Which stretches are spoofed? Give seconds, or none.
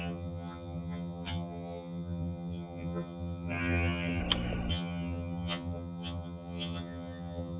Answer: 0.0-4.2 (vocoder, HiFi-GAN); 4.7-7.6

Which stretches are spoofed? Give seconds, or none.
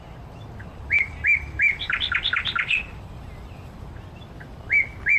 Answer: 0.7-3.8 (vocoder, BigVGAN v2)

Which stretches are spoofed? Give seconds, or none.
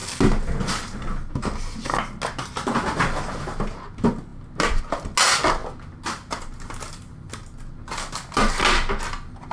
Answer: none